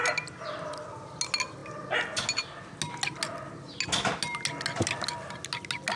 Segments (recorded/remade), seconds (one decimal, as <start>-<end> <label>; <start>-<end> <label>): 0.0-6.0 recorded